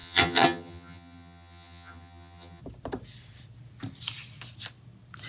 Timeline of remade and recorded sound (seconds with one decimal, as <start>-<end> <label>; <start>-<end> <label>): 0.0-2.6 remade; 2.6-5.3 recorded